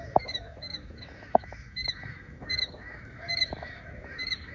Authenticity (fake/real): fake